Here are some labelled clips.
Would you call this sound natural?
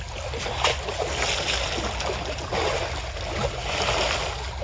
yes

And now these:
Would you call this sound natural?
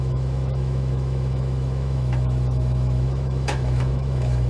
no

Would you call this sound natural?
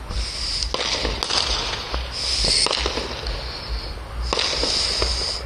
yes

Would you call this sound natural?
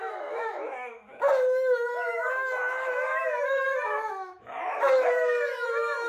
no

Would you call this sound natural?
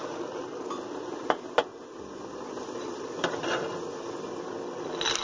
yes